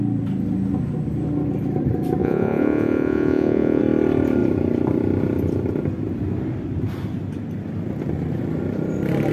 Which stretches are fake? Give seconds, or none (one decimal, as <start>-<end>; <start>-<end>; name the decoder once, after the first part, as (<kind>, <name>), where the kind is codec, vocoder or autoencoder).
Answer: 2.2-3.8 (vocoder, Vocos)